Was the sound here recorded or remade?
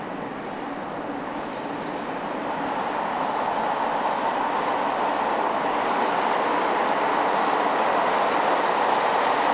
recorded